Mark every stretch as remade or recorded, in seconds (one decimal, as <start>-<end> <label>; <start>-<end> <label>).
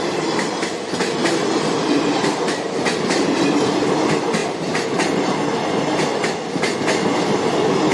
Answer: 0.0-1.2 recorded; 1.2-3.7 remade; 3.7-4.4 recorded; 4.4-5.2 remade; 5.2-7.9 recorded